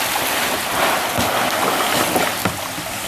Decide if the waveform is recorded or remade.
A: recorded